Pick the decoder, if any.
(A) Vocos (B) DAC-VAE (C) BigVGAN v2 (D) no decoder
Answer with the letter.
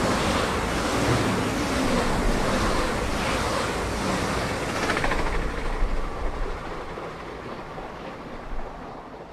D